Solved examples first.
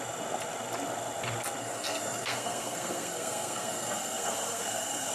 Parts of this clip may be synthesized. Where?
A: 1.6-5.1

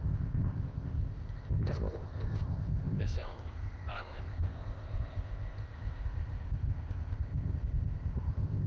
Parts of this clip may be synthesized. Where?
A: 0.0-8.7

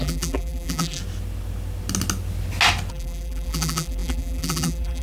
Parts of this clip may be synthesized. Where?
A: 0.0-1.0; 2.9-5.0

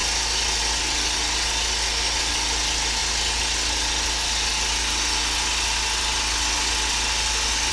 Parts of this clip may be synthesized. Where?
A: none